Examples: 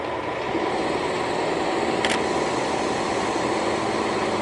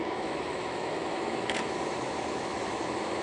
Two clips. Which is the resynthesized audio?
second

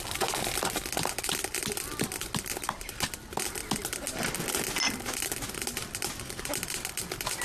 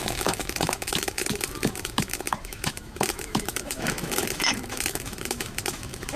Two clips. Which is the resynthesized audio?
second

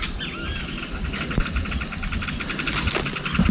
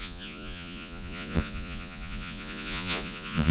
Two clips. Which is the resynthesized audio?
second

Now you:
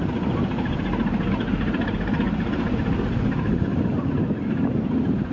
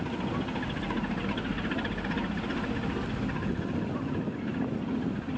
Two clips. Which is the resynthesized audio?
first